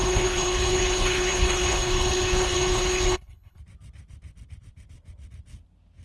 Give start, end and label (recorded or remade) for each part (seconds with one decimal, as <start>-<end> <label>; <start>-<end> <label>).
0.0-3.6 remade; 3.6-6.0 recorded